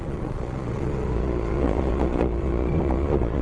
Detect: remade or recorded remade